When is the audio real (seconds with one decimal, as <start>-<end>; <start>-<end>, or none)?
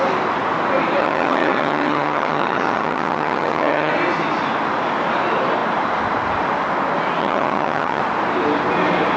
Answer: 0.0-1.0; 3.9-7.2; 8.0-9.2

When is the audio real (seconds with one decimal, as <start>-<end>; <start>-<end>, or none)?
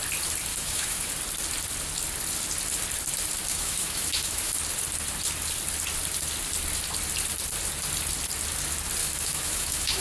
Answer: 0.0-0.5; 1.1-3.5; 4.6-9.0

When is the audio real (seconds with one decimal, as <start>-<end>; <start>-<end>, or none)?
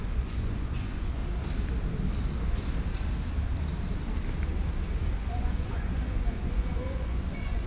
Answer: 1.2-5.3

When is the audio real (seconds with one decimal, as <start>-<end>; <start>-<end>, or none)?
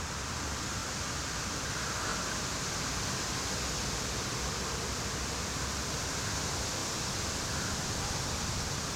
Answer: 0.0-0.8; 1.5-9.0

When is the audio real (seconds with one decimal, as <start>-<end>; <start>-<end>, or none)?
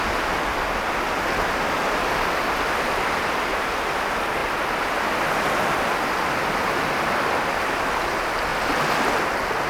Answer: 0.0-9.7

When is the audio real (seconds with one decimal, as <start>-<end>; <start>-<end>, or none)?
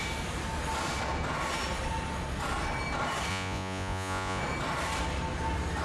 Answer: 0.0-3.3; 4.4-5.8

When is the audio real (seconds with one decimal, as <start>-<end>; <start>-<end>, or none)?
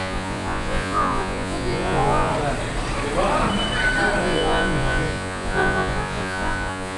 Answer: 2.3-4.2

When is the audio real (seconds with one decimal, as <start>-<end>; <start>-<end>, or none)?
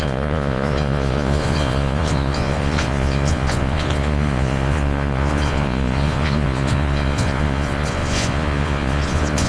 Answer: none